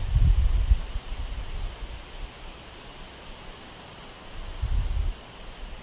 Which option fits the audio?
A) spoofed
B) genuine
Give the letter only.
B